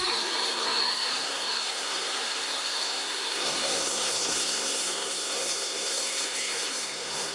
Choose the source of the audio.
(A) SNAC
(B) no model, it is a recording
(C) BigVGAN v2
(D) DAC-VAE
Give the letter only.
A